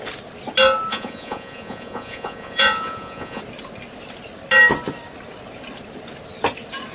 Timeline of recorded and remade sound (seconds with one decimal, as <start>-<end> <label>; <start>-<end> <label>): 0.0-0.9 recorded; 0.9-3.4 remade; 3.4-6.9 recorded